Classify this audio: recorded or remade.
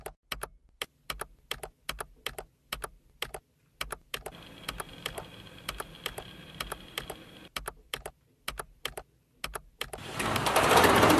recorded